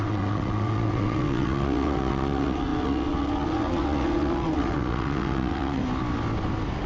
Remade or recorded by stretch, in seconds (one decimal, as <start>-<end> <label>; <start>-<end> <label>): 0.0-5.8 remade; 5.8-6.9 recorded